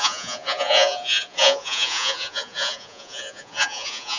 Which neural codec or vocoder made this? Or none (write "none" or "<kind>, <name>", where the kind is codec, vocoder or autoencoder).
vocoder, Vocos